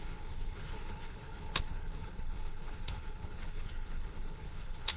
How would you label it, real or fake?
fake